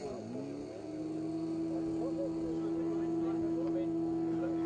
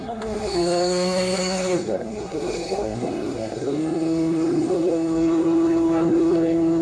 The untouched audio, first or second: first